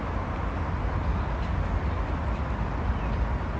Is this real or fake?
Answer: real